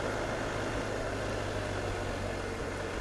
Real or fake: real